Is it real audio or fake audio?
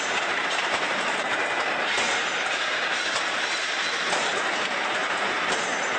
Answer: fake